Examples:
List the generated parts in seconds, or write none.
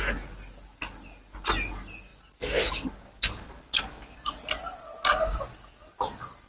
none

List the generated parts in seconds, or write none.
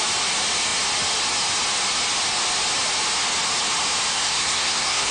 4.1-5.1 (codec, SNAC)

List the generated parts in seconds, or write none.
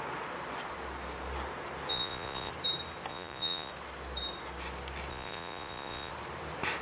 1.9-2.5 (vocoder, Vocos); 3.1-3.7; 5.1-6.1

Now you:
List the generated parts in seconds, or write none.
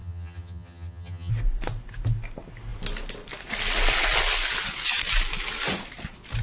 0.0-1.3 (vocoder, HiFi-GAN)